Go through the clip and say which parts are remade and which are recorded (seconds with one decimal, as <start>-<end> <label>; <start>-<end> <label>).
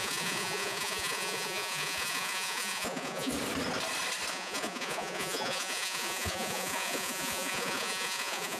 0.0-3.3 remade; 3.3-4.3 recorded; 4.3-8.6 remade